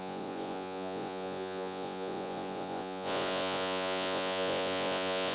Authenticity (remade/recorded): remade